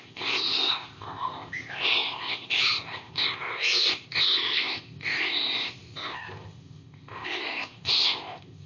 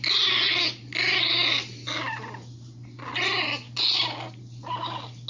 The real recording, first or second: second